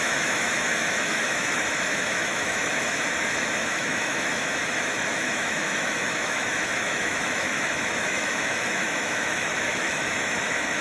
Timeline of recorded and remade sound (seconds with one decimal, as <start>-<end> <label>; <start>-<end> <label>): 0.0-10.8 remade